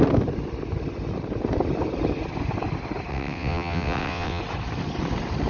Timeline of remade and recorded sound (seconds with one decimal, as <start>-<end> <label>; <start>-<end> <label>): 0.0-3.1 recorded; 3.1-4.4 remade; 4.4-5.5 recorded